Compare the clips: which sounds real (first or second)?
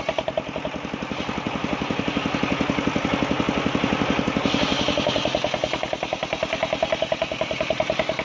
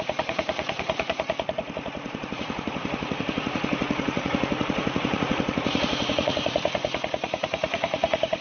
first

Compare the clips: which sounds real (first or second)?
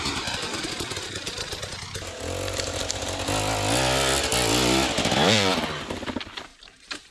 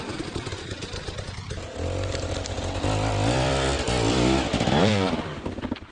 first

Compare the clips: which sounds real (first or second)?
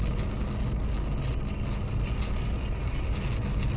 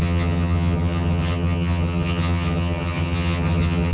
first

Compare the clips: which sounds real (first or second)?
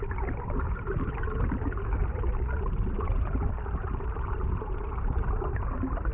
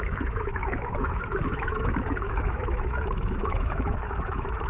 first